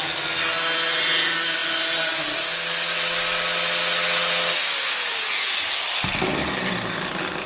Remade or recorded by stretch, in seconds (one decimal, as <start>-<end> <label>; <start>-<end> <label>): 0.0-7.5 recorded